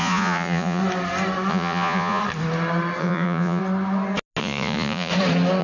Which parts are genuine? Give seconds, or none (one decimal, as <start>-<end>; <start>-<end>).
0.8-1.5; 2.2-3.0; 3.6-4.4; 5.1-5.6